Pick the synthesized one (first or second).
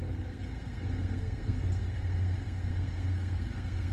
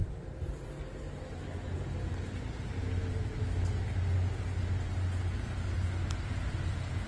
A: first